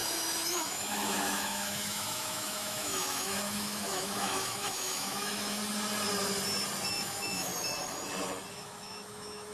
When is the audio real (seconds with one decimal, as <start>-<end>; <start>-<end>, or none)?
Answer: 5.6-6.9; 7.5-8.5